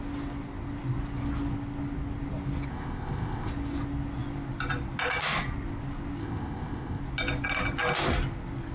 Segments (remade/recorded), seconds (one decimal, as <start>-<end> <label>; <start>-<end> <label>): 0.0-2.7 recorded; 2.7-3.5 remade; 3.5-6.2 recorded; 6.2-7.0 remade; 7.0-8.7 recorded